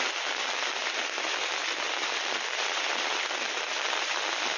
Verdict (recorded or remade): recorded